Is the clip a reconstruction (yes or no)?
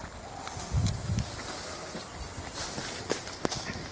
no